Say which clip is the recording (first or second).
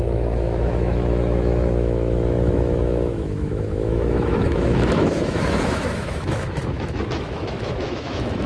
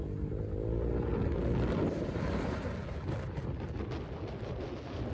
second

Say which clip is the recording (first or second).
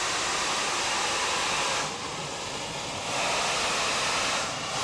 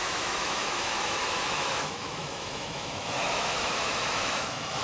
first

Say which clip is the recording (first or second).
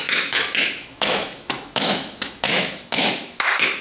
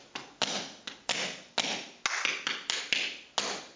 second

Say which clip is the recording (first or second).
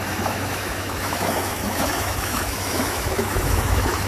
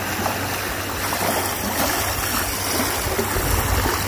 second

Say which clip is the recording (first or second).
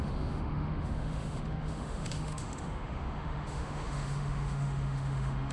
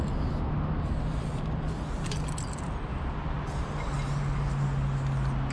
second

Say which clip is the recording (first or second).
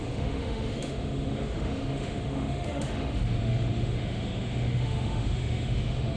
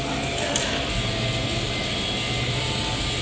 second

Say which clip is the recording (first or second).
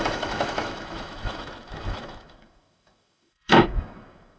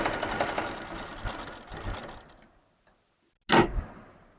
second